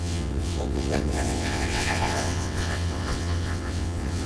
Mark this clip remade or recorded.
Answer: remade